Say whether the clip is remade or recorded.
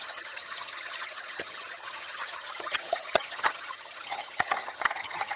remade